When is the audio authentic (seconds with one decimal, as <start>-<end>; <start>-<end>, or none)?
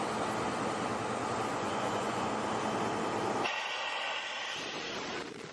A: 0.0-1.5; 2.3-5.5